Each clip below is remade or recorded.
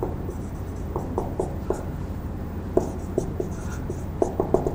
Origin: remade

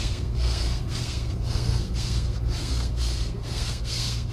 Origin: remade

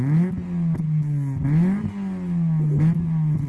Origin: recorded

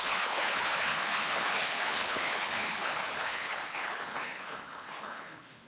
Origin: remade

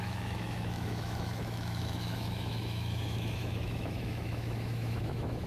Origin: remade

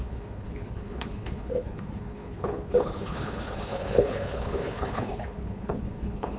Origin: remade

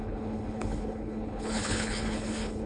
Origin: remade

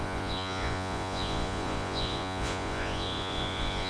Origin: remade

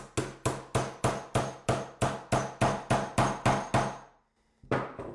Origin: recorded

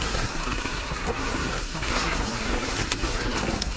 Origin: remade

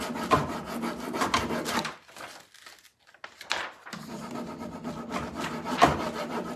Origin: recorded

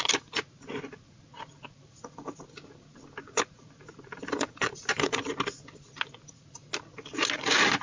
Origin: recorded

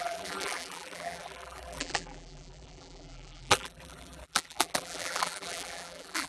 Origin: remade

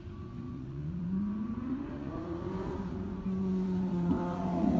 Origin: remade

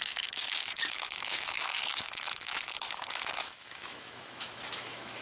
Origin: remade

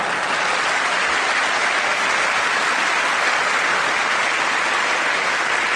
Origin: recorded